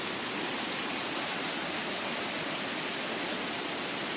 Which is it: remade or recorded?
recorded